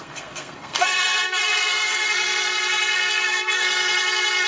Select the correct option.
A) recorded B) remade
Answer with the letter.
B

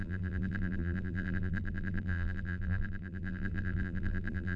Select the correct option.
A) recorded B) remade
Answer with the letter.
B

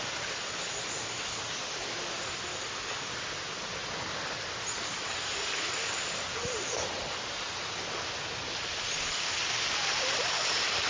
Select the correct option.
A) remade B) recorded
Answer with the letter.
B